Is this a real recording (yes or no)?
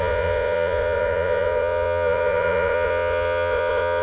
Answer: no